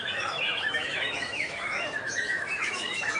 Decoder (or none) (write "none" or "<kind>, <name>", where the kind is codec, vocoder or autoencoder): autoencoder, DAC-VAE